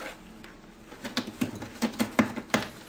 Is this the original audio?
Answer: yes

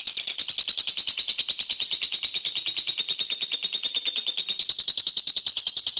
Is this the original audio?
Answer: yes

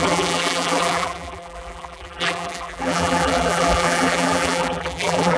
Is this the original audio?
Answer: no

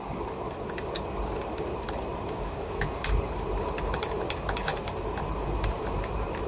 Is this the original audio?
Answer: no